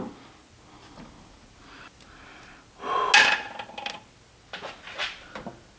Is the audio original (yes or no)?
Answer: yes